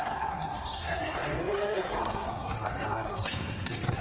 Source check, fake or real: fake